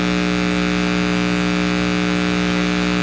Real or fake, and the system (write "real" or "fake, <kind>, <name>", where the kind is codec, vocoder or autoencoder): real